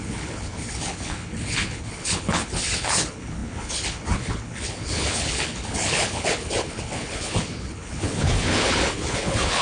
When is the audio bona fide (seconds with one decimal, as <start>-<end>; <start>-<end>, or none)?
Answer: none